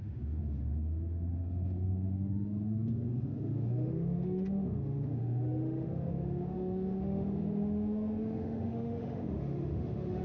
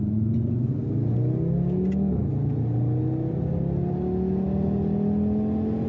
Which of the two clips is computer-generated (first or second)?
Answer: first